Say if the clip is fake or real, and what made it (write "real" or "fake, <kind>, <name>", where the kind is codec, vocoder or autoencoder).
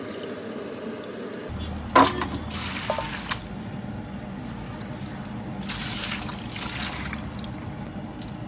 real